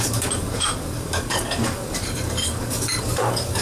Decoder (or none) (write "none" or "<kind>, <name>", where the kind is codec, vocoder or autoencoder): codec, DAC